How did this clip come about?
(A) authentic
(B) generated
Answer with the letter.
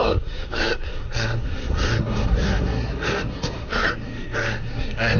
B